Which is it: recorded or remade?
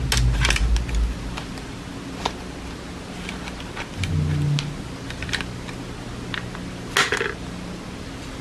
recorded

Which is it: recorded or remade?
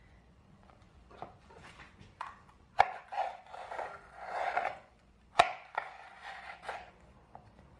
remade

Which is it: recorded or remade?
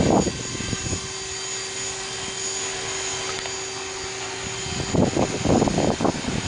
recorded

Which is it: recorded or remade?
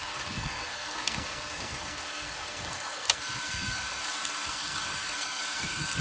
remade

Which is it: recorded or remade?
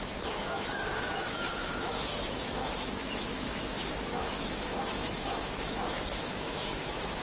remade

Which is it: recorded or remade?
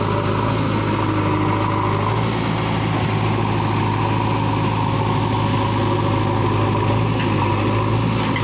recorded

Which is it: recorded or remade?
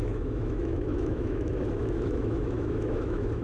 remade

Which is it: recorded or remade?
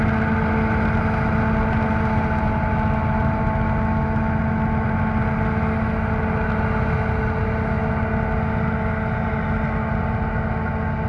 recorded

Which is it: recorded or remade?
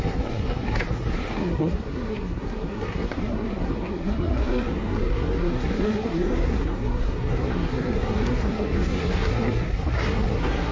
remade